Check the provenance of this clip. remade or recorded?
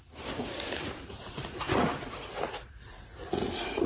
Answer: remade